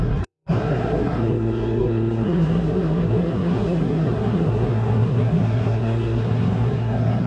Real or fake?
fake